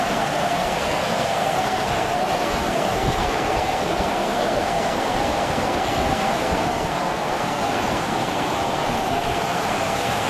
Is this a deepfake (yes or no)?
yes